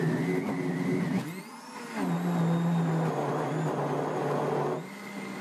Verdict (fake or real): real